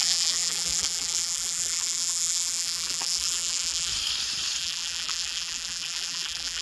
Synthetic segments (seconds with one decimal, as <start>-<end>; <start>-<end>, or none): 0.0-3.9; 4.6-6.6